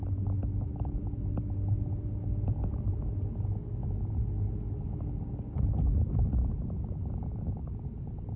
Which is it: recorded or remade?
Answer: recorded